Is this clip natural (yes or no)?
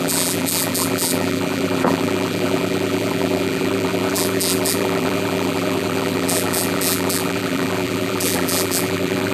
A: no